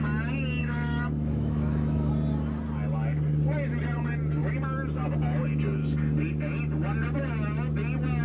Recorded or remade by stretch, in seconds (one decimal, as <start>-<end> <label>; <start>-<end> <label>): 0.0-0.6 recorded; 0.6-2.1 remade; 2.1-8.2 recorded

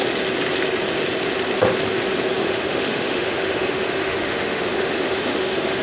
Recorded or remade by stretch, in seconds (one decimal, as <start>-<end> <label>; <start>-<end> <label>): 0.0-2.4 recorded; 2.4-5.8 remade

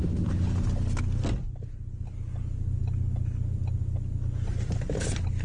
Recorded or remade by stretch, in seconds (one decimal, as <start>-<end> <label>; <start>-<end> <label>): 0.0-5.4 recorded

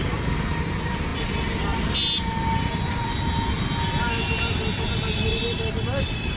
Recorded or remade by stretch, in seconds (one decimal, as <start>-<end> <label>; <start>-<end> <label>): 0.0-6.4 recorded

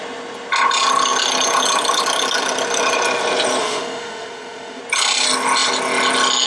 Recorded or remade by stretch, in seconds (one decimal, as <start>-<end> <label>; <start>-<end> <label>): 0.0-3.6 recorded; 3.6-4.8 remade; 4.8-6.5 recorded

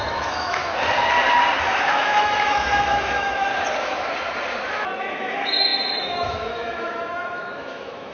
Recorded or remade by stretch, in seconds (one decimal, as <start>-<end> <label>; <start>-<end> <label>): 0.0-0.6 remade; 0.6-1.6 recorded; 1.6-3.5 remade; 3.5-5.0 recorded; 5.0-8.1 remade

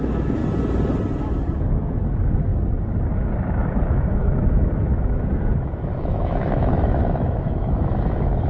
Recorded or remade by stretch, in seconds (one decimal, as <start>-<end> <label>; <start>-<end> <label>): 0.0-0.4 remade; 0.4-1.8 recorded; 1.8-2.5 remade; 2.5-4.1 recorded; 4.1-8.5 remade

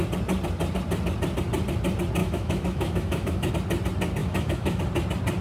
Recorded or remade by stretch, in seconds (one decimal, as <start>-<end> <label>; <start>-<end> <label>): 0.0-2.2 recorded; 2.2-3.5 remade; 3.5-4.2 recorded; 4.2-4.8 remade; 4.8-5.4 recorded